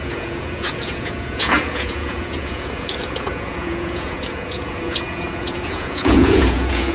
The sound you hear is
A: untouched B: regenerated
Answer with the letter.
B